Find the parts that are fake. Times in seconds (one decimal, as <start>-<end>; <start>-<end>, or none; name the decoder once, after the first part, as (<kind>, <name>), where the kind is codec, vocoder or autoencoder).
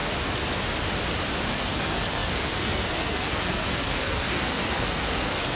1.5-5.6 (codec, SNAC)